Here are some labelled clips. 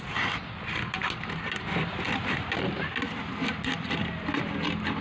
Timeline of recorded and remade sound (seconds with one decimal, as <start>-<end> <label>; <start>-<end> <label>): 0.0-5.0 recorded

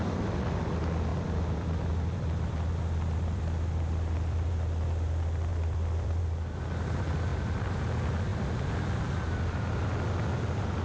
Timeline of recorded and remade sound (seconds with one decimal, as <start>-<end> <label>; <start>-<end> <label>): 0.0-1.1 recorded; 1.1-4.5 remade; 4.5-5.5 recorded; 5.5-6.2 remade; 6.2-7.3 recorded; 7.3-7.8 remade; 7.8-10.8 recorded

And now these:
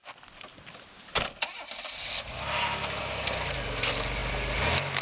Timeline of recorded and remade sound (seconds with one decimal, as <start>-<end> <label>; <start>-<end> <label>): 0.0-5.0 recorded

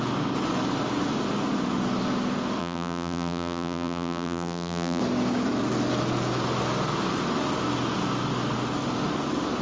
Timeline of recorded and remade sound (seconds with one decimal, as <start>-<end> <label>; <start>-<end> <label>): 0.0-2.6 recorded; 2.6-5.0 remade; 5.0-9.6 recorded

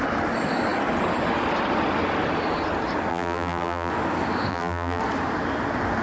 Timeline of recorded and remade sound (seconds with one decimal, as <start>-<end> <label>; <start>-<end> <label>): 0.0-3.1 recorded; 3.1-3.9 remade; 3.9-4.5 recorded; 4.5-5.0 remade; 5.0-6.0 recorded

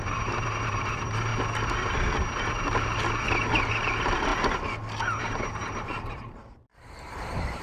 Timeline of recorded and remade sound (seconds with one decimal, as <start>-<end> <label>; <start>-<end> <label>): 0.0-1.3 remade; 1.3-3.6 recorded; 3.6-4.3 remade; 4.3-5.2 recorded; 5.2-7.6 remade

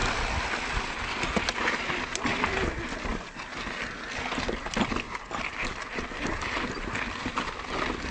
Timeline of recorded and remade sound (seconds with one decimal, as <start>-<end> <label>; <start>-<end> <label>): 0.0-8.1 recorded

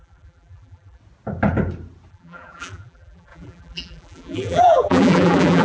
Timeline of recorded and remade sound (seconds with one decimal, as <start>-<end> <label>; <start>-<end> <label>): 0.0-1.0 remade; 1.0-2.1 recorded; 2.1-5.6 remade